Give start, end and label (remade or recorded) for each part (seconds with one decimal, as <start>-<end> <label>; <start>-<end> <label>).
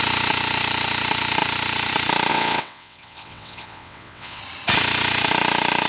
0.0-2.3 recorded; 2.3-4.4 remade; 4.4-5.9 recorded